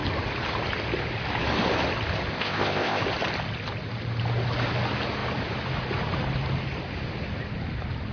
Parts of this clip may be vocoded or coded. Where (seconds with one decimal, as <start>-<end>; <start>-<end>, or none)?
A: 2.3-3.0